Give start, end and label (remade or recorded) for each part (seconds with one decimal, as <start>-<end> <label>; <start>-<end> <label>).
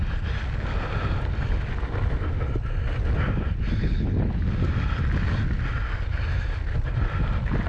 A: 0.0-3.8 recorded; 3.8-4.3 remade; 4.3-7.7 recorded